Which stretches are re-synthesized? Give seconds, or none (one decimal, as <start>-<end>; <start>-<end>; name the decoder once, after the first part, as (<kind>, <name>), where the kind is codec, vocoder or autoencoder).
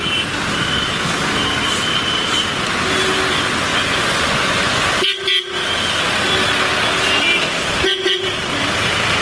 3.7-4.9 (vocoder, Vocos)